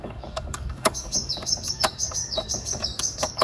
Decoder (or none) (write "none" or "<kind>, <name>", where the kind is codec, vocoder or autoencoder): codec, DAC